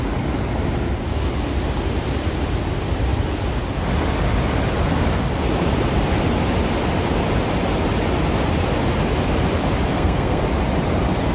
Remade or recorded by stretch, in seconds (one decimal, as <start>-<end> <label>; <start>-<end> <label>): 0.0-9.9 recorded; 9.9-10.4 remade; 10.4-11.3 recorded

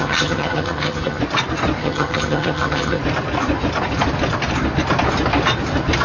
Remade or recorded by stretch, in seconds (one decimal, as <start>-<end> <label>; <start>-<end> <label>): 0.0-1.2 remade; 1.2-1.8 recorded; 1.8-3.0 remade; 3.0-6.0 recorded

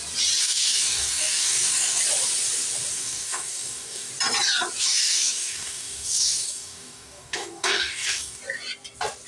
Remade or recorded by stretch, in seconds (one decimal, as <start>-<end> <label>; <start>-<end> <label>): 0.0-0.4 recorded; 0.4-2.0 remade; 2.0-2.9 recorded; 2.9-4.1 remade; 4.1-4.8 recorded; 4.8-8.4 remade; 8.4-9.3 recorded

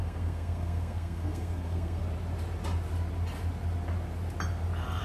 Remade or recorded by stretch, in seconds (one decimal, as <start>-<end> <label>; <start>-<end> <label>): 0.0-2.0 remade; 2.0-5.0 recorded